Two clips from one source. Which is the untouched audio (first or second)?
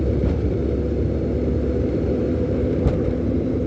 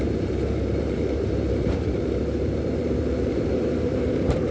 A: first